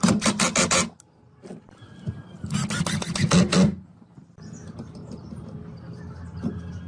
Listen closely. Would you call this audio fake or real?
real